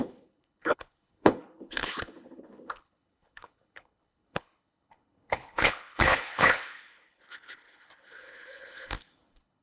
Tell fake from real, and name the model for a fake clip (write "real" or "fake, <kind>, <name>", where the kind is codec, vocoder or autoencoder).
fake, codec, HILCodec